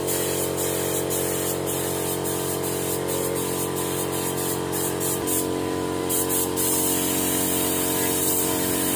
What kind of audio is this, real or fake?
fake